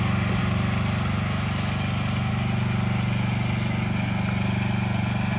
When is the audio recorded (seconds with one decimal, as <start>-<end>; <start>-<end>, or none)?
0.0-5.4